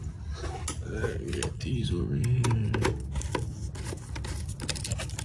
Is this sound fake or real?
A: real